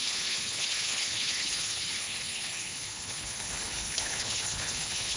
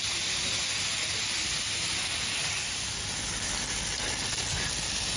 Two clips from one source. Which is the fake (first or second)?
first